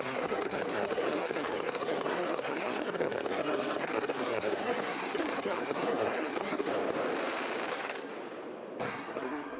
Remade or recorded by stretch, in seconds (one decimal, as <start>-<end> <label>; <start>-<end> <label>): 0.0-6.7 remade; 6.7-7.7 recorded; 7.7-8.1 remade; 8.1-8.8 recorded; 8.8-9.6 remade